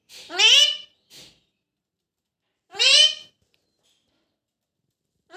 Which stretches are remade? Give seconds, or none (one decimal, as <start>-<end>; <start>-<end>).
none